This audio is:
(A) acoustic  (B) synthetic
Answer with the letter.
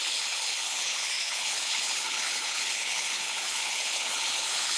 B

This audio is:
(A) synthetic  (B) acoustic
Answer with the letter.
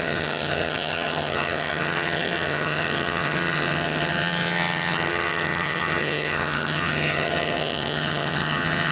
A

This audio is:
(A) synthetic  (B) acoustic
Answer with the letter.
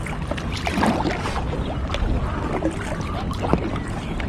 B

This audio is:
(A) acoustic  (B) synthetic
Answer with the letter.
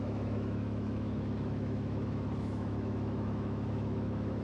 B